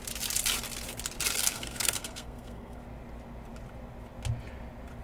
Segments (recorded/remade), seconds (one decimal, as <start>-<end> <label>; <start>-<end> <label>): 0.0-1.4 recorded; 1.4-2.8 remade; 2.8-5.0 recorded